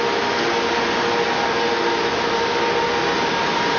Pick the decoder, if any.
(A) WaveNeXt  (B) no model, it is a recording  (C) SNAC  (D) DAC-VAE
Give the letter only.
B